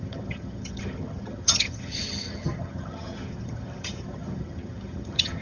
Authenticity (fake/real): fake